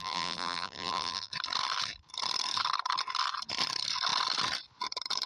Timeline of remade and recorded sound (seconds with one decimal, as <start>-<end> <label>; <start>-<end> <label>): 0.0-1.3 remade; 1.3-5.3 recorded